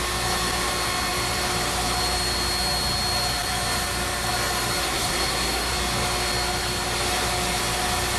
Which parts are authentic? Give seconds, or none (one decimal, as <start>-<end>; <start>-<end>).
0.0-4.8; 5.7-8.2